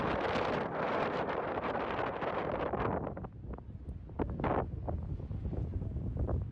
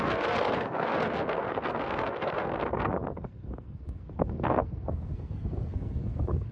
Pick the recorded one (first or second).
first